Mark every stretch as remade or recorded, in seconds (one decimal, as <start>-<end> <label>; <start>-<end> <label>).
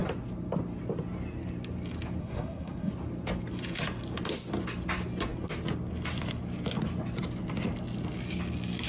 0.0-2.2 recorded; 2.2-2.9 remade; 2.9-8.9 recorded